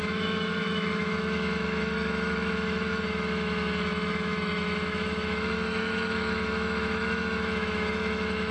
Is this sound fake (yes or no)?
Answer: yes